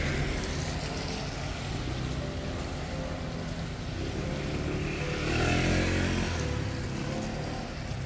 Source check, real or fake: real